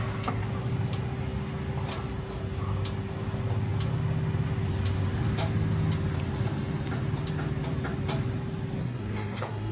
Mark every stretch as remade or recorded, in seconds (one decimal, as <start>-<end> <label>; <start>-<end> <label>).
0.0-8.8 recorded; 8.8-9.7 remade